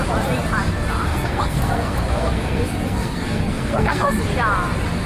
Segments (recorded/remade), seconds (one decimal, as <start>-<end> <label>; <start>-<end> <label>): 0.0-1.1 recorded; 1.1-4.2 remade; 4.2-5.1 recorded